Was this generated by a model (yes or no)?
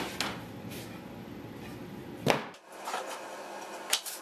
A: no